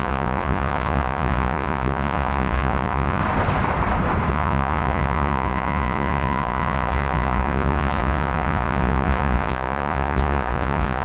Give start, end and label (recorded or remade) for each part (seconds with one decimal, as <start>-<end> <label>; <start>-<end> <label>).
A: 0.0-3.2 remade; 3.2-4.3 recorded; 4.3-11.0 remade